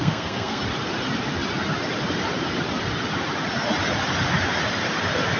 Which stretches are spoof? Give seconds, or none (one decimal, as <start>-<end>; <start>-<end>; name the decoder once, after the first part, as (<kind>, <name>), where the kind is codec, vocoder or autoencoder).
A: 0.0-0.6 (codec, SNAC)